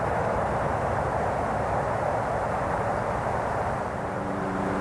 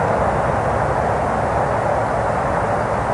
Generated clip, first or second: first